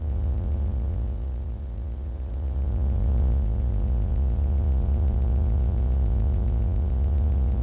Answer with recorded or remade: remade